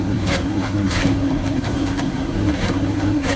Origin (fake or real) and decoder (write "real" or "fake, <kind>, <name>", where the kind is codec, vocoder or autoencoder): fake, codec, SNAC